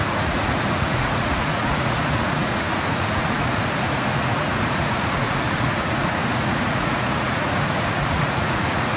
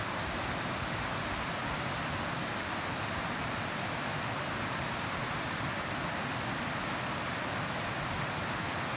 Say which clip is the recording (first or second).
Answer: second